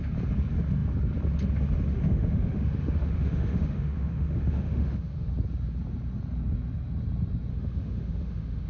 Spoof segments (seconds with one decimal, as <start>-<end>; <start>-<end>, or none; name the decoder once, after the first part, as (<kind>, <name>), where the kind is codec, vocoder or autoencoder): 1.9-5.3 (autoencoder, DAC-VAE); 7.5-8.7